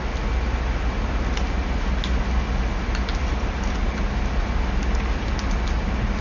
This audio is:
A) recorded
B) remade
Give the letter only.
A